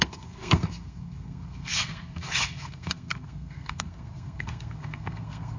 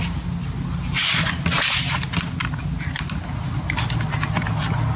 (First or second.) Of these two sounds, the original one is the second